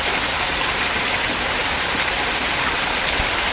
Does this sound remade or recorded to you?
recorded